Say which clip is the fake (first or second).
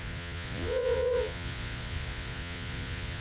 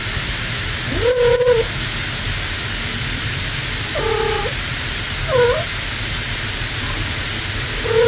first